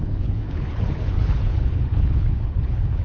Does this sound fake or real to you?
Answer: fake